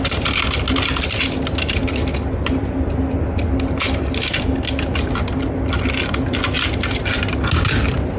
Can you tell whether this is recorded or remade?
recorded